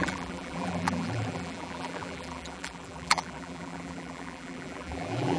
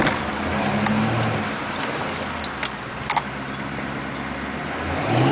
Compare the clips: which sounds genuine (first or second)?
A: second